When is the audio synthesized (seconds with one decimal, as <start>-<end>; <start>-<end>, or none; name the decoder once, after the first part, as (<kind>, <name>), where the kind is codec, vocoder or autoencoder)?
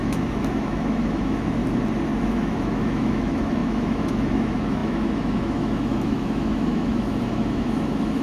0.0-1.6 (autoencoder, DAC-VAE); 2.2-8.2